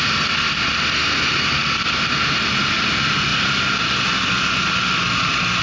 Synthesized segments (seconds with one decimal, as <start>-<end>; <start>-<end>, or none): none